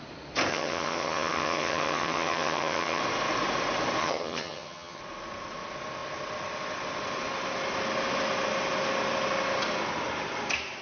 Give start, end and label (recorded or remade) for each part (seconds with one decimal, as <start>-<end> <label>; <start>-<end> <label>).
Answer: 0.0-0.5 recorded; 0.5-3.0 remade; 3.0-4.0 recorded; 4.0-5.0 remade; 5.0-10.8 recorded